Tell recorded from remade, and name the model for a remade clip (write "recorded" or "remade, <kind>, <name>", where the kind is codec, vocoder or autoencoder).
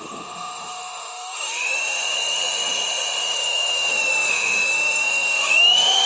remade, autoencoder, DAC-VAE